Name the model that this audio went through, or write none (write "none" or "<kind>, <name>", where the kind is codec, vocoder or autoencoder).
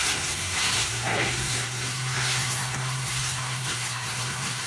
codec, SNAC